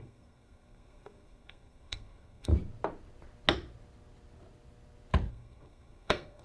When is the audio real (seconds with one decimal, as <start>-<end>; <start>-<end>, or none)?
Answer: 2.5-5.3